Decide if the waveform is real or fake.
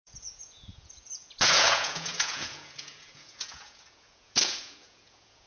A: fake